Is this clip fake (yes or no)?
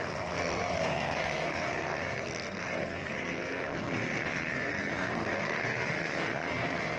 yes